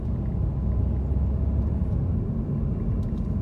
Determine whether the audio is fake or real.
real